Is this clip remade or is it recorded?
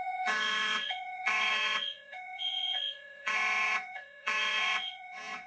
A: remade